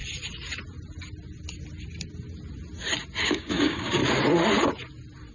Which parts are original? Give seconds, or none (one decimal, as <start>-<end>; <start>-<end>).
0.0-3.2; 4.0-5.3